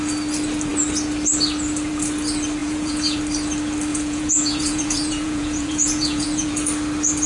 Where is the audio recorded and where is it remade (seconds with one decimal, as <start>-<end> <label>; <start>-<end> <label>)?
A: 0.0-2.6 recorded; 2.6-3.2 remade; 3.2-3.9 recorded; 3.9-6.5 remade; 6.5-7.3 recorded